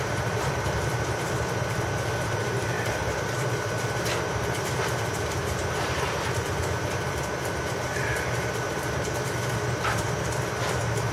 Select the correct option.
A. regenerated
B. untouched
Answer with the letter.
A